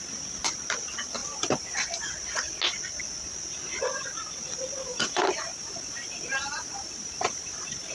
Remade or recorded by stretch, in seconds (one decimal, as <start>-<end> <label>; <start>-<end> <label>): 0.0-1.2 recorded; 1.2-1.9 remade; 1.9-4.9 recorded; 4.9-7.9 remade